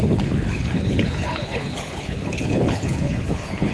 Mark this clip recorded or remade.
remade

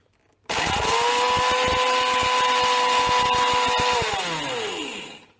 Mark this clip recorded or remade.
recorded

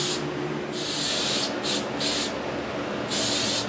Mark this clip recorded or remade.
recorded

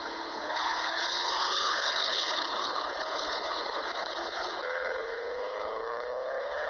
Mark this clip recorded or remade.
remade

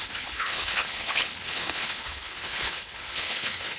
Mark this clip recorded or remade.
remade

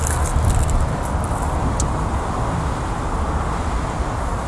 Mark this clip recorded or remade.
recorded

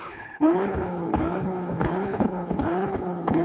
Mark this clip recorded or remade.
remade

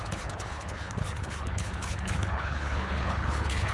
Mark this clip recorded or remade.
remade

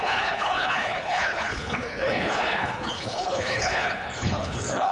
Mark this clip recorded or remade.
remade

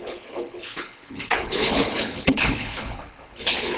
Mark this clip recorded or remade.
remade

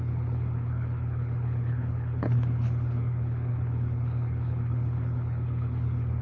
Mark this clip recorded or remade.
remade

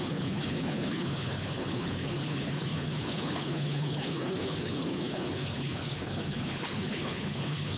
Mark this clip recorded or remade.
remade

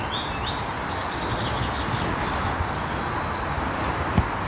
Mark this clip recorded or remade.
recorded